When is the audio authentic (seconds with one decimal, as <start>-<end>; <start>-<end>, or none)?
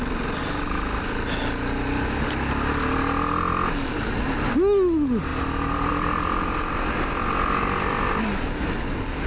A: 0.0-9.3